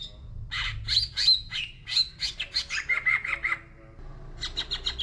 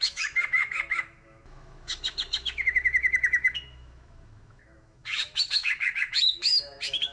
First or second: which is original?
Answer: first